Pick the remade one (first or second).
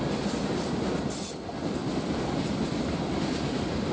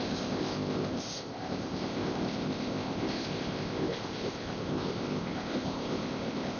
second